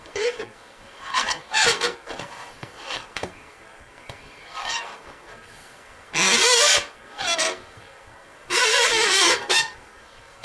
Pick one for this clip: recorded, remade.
remade